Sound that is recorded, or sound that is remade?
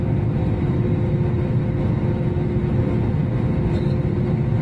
recorded